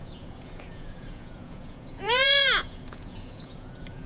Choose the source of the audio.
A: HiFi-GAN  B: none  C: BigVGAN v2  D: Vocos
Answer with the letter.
D